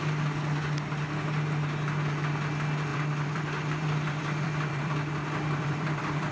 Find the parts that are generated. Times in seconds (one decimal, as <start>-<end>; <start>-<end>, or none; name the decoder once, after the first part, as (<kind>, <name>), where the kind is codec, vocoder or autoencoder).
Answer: 2.9-6.3 (vocoder, BigVGAN v2)